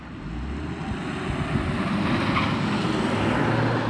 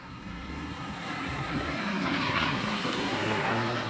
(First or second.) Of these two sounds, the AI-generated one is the second